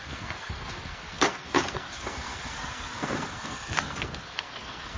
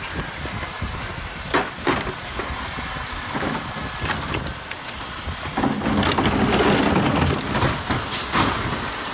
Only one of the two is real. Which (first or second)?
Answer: second